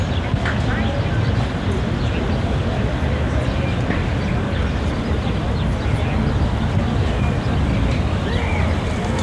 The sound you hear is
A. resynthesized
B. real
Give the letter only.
B